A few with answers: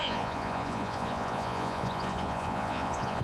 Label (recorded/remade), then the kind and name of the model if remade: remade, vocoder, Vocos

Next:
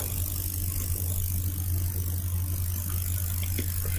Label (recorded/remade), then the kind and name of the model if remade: recorded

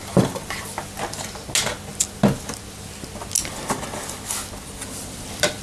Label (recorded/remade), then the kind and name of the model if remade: recorded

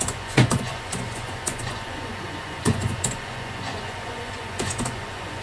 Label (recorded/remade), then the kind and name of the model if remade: remade, vocoder, Vocos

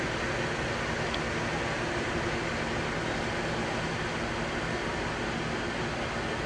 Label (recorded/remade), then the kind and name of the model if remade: recorded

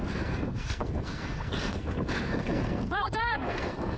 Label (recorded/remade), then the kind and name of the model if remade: remade, codec, SNAC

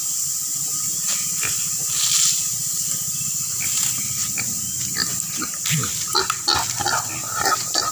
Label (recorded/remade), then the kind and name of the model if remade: recorded